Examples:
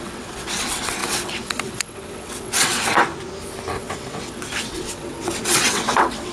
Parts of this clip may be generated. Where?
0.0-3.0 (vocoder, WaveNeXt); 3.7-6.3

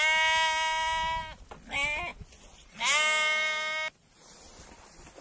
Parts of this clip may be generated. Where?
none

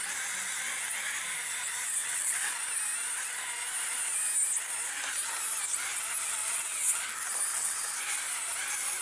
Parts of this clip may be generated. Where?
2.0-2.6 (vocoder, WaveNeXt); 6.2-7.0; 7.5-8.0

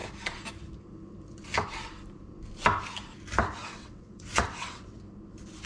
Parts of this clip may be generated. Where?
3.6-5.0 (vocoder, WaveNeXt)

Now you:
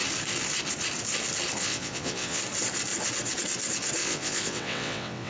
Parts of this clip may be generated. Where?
1.6-2.4 (vocoder, WaveNeXt); 4.0-5.3

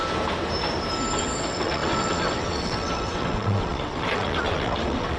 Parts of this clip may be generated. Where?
1.2-5.2 (vocoder, WaveNeXt)